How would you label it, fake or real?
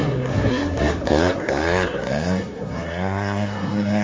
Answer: fake